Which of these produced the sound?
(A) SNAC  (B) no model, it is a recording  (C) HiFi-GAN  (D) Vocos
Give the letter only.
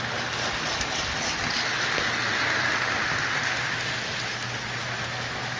B